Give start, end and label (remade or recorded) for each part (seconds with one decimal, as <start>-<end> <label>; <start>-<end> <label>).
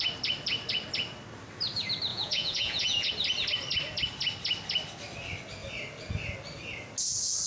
0.0-2.1 recorded; 2.1-3.1 remade; 3.1-7.5 recorded